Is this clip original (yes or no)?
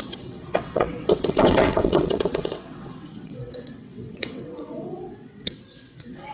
no